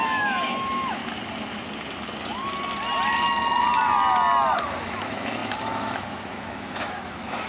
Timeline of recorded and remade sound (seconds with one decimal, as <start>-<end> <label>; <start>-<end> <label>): 0.0-1.0 remade; 1.0-4.7 recorded; 4.7-7.5 remade